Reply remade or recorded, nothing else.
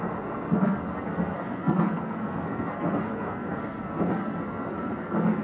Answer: remade